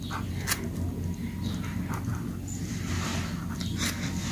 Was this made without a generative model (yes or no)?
yes